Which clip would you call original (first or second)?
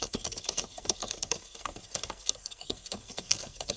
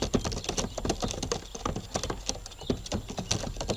second